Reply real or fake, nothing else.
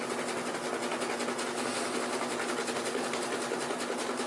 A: real